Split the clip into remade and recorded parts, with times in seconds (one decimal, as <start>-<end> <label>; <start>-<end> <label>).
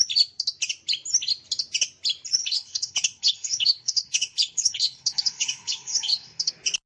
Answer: 0.0-2.4 recorded; 2.4-6.5 remade; 6.5-6.9 recorded